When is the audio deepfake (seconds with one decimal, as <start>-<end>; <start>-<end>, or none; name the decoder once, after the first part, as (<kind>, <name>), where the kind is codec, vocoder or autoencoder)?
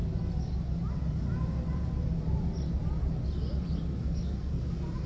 4.0-4.6 (codec, SNAC)